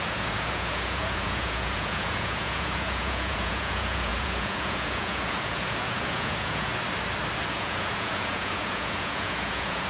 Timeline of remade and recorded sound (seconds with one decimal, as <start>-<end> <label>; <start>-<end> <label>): 0.0-6.7 remade; 6.7-7.5 recorded; 7.5-9.9 remade